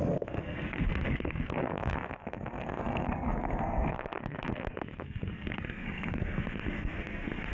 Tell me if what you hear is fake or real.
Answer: fake